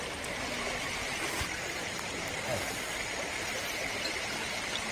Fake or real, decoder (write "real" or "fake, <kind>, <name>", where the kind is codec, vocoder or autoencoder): real